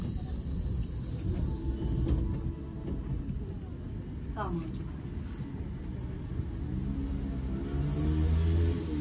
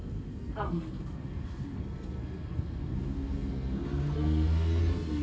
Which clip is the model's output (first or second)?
second